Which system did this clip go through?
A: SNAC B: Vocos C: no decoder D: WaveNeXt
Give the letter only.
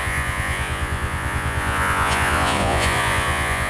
B